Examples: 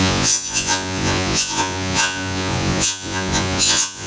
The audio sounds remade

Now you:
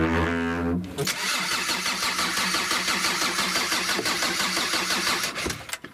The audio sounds recorded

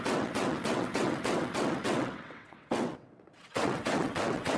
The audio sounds remade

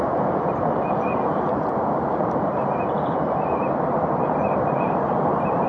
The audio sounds remade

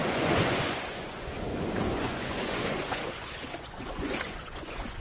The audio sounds remade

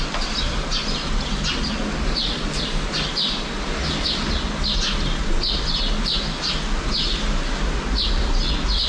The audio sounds recorded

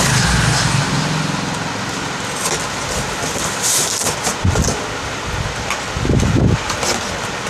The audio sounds recorded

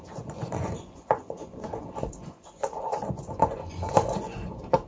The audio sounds remade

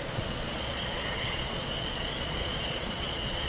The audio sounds remade